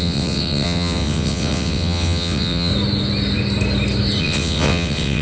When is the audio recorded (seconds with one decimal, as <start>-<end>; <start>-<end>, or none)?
2.7-4.2